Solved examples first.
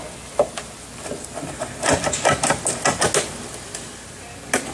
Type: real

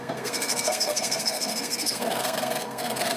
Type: fake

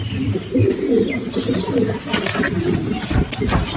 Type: real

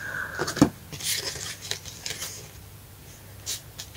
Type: real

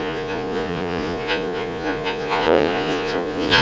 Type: fake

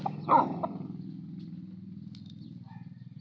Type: real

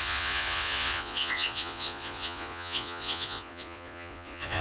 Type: fake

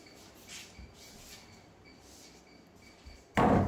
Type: real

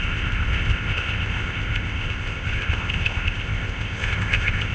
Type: fake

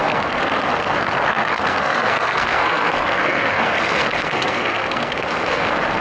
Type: fake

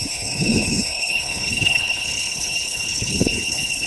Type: fake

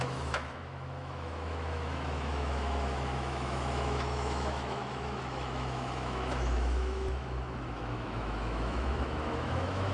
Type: fake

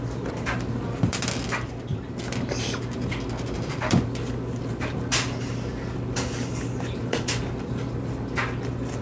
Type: fake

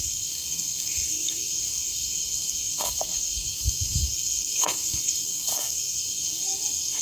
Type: fake